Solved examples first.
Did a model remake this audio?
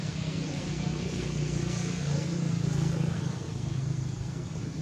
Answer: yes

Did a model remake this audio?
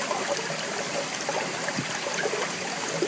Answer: no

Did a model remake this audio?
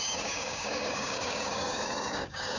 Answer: yes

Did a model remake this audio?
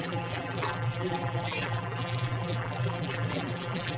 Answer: yes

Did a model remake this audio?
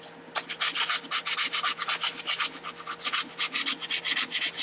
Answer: no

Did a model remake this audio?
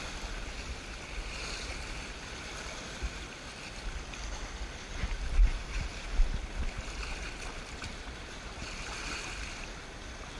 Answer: yes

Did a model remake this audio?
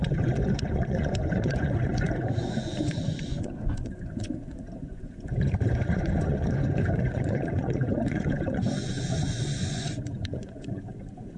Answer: yes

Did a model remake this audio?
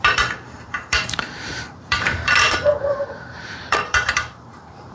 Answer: yes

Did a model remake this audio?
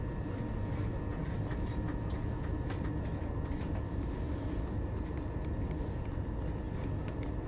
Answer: no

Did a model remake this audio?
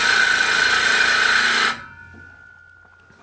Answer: no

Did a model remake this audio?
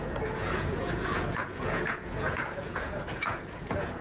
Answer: yes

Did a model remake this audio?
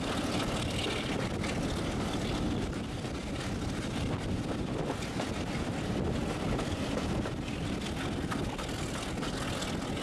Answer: no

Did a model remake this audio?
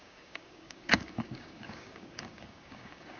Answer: yes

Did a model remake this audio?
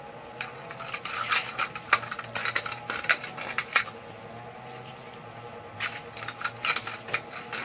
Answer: no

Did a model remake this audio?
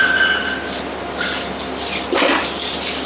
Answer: no